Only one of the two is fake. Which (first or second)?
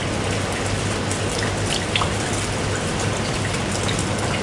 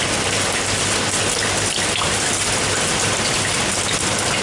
second